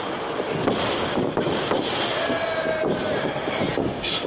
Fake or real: real